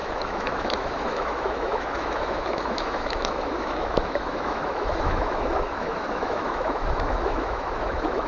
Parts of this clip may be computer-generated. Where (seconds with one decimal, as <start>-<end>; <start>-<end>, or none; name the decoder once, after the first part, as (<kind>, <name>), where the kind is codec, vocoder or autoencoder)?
0.0-8.3 (autoencoder, DAC-VAE)